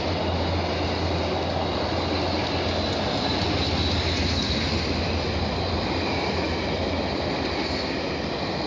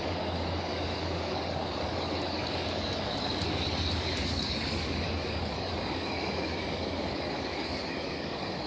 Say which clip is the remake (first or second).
second